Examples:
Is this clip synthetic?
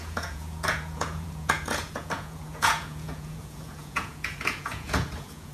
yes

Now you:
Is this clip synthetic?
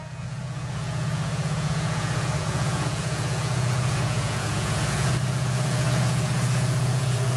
yes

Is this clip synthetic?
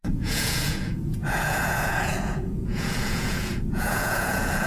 yes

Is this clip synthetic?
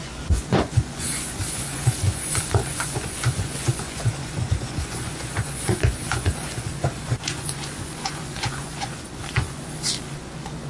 yes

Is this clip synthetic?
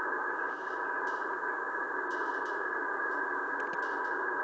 no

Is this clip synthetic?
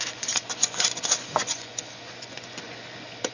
yes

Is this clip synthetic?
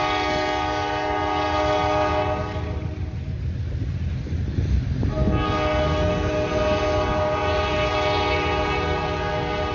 no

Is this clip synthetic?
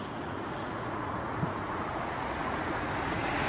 yes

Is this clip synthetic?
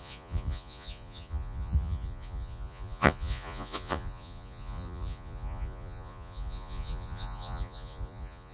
yes